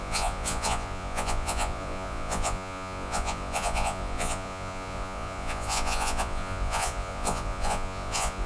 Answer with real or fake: fake